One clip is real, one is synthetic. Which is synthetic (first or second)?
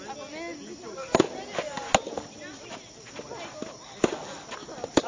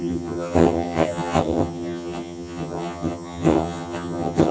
second